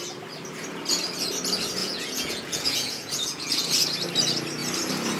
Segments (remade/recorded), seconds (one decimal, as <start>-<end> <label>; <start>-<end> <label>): 0.0-1.8 recorded; 1.8-3.7 remade; 3.7-5.2 recorded